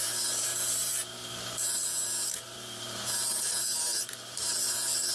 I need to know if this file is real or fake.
fake